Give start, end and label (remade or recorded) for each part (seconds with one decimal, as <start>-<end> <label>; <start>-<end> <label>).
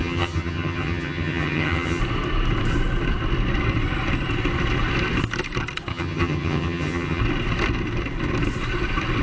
0.0-2.0 remade; 2.0-5.9 recorded; 5.9-7.2 remade; 7.2-9.2 recorded